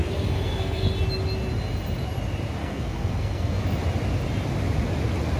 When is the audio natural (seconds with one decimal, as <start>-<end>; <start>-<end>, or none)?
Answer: 0.9-2.6; 3.6-5.4